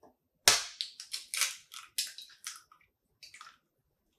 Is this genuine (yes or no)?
yes